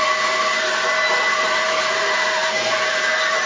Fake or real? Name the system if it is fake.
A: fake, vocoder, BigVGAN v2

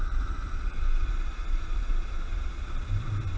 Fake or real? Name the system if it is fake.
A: fake, vocoder, BigVGAN v2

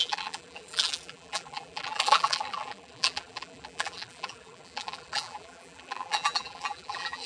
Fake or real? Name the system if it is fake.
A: fake, vocoder, BigVGAN v2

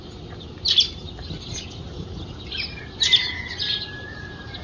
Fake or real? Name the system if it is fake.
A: real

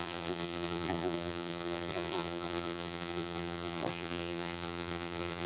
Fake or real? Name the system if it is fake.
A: fake, vocoder, BigVGAN v2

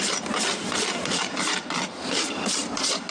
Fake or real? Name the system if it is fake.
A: fake, vocoder, BigVGAN v2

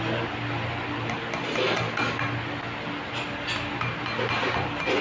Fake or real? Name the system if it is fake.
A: real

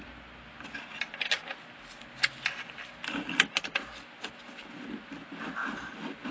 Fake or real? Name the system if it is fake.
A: real